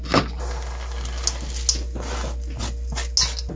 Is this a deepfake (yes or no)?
no